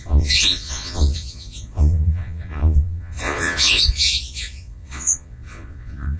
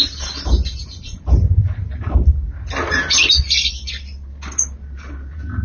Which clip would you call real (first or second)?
second